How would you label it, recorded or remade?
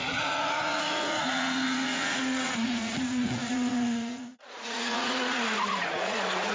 remade